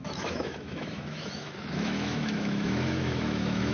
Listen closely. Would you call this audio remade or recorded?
remade